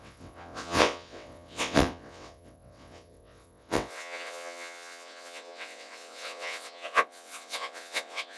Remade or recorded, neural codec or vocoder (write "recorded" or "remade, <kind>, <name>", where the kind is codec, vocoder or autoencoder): remade, vocoder, WaveNeXt